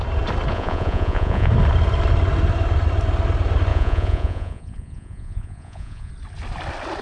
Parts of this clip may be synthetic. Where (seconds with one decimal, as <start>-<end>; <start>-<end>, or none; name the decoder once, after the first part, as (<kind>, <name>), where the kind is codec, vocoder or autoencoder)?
0.5-1.5 (vocoder, Vocos); 3.7-6.1